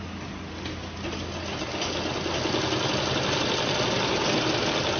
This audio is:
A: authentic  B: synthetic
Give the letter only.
A